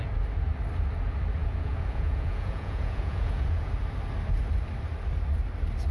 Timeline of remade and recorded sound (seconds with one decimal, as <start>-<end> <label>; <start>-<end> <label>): 0.0-1.4 recorded; 1.4-3.7 remade; 3.7-5.9 recorded